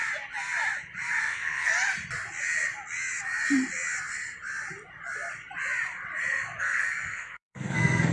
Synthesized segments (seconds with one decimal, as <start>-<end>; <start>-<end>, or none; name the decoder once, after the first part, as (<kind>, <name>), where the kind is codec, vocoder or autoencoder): 1.2-1.7 (codec, SNAC); 6.6-8.1